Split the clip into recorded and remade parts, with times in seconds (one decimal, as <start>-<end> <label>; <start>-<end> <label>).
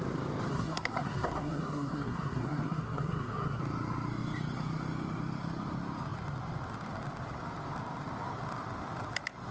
0.0-0.5 recorded; 0.5-3.6 remade; 3.6-9.5 recorded